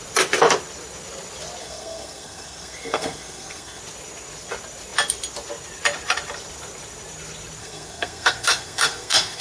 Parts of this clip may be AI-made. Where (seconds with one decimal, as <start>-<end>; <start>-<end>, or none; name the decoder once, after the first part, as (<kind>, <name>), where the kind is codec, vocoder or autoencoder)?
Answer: 1.6-3.8 (codec, SNAC); 7.6-9.4

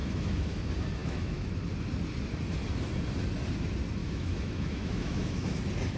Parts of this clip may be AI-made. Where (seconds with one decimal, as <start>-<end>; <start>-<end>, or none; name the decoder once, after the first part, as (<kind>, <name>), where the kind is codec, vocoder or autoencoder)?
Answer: 0.0-0.6 (autoencoder, DAC-VAE); 1.0-1.5; 4.0-5.6

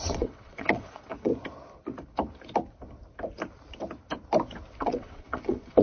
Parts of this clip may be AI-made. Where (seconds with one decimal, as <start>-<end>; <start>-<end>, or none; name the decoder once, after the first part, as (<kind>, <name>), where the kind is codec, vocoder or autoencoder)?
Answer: 0.0-1.3 (vocoder, WaveNeXt); 4.8-5.8

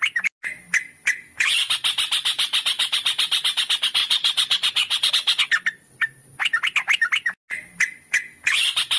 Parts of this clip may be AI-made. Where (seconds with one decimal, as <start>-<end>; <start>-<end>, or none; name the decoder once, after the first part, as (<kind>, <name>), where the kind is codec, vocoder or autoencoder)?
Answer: 4.0-5.1 (vocoder, Vocos)

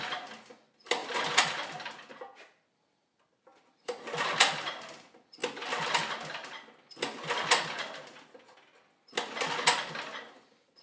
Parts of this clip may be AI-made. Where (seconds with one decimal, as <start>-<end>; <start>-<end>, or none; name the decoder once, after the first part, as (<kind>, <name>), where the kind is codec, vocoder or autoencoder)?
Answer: none

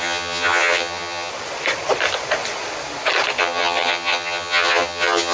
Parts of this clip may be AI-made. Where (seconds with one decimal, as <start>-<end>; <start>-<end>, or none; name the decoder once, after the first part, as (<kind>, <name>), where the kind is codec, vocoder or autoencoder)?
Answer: 0.0-1.3 (vocoder, HiFi-GAN); 3.4-5.3